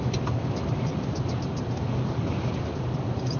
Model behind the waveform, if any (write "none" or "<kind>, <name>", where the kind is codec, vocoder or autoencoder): none